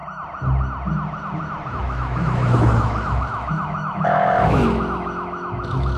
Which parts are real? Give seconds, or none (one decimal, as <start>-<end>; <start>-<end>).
0.0-1.7